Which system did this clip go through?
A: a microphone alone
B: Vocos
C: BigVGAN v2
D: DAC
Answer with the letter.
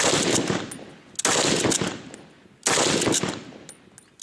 A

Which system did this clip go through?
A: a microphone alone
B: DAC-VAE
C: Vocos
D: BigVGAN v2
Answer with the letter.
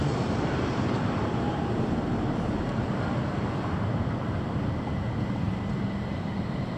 D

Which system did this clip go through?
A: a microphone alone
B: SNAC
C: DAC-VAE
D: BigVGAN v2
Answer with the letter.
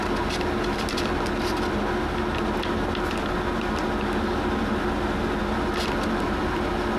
A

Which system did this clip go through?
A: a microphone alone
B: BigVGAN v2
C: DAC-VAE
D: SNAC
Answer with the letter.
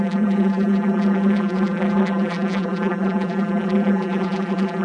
B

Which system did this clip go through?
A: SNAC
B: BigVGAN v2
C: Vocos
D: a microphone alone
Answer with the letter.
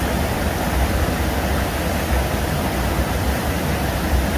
D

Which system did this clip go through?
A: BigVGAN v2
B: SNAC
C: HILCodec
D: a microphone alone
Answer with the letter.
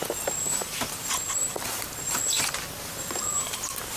A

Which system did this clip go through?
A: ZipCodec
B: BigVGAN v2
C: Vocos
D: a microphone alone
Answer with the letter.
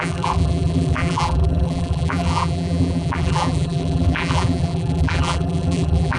B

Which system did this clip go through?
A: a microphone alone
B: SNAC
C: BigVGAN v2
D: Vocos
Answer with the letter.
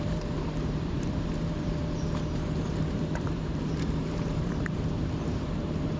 C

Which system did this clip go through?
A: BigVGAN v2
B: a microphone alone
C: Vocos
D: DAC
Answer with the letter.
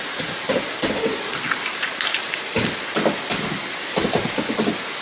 B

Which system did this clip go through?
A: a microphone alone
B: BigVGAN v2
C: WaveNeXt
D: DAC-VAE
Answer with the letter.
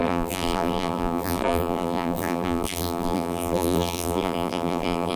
B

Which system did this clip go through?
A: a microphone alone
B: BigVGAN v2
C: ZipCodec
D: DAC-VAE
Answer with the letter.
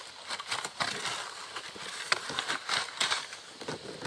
A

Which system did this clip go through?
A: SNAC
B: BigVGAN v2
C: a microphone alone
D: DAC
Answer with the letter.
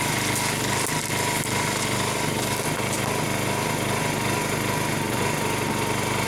C